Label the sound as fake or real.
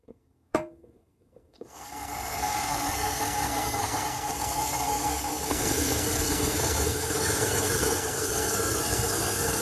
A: fake